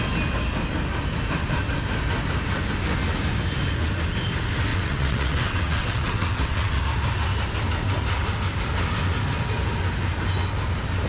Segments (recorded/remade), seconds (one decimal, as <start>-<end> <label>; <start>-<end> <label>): 0.0-4.7 recorded; 4.7-6.8 remade; 6.8-11.1 recorded